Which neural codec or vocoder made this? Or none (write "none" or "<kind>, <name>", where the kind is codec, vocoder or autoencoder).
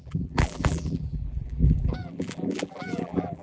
vocoder, BigVGAN v2